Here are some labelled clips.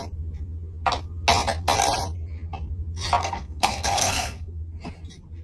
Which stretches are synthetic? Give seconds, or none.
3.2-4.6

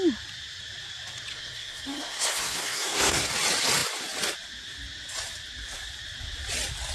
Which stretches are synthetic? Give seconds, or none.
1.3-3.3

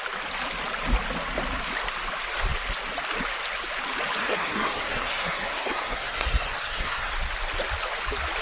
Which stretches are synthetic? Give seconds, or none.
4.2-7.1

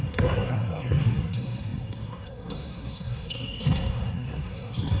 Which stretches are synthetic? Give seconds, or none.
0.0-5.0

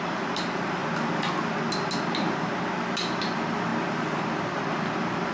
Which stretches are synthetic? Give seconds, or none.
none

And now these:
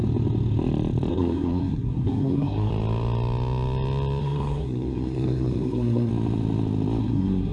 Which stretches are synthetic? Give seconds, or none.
1.1-2.7; 4.2-6.1; 7.0-7.5

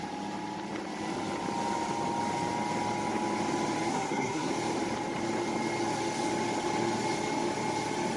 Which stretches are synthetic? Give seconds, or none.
3.9-4.5

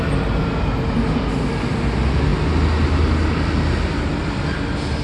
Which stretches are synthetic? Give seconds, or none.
none